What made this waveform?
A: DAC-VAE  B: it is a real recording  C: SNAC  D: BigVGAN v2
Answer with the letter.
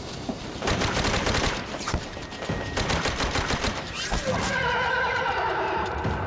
D